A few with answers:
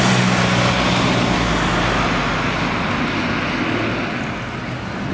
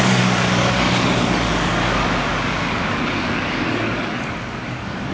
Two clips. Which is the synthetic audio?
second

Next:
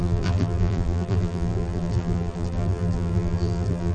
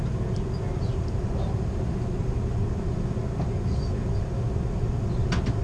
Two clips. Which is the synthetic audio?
first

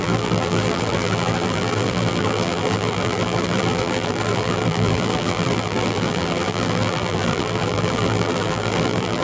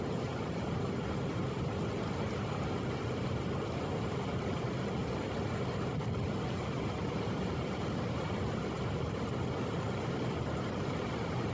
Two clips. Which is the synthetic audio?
first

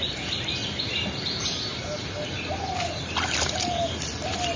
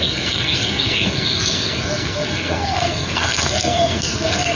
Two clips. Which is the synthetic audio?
second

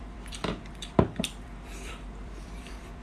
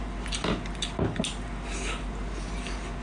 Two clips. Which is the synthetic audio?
first